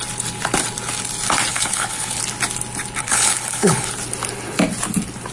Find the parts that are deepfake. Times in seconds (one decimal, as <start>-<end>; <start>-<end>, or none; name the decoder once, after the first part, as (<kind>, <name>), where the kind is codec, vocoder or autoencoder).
1.5-2.2 (codec, HILCodec); 3.0-3.9